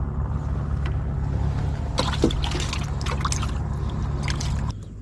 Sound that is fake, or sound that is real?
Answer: real